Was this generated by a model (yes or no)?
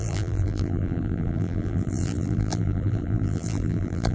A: yes